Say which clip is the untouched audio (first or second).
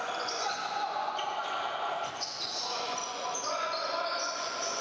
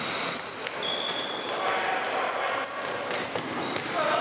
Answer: second